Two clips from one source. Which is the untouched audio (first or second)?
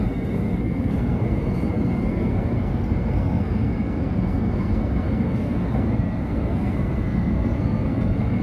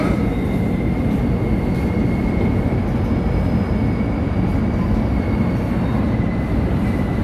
second